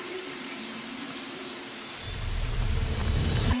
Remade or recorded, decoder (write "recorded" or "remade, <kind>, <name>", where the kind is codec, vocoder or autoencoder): remade, vocoder, BigVGAN v2